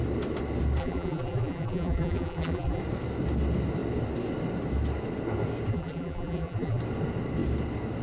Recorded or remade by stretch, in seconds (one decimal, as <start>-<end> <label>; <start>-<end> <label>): 0.0-0.8 recorded; 0.8-2.8 remade; 2.8-5.7 recorded; 5.7-6.8 remade; 6.8-8.0 recorded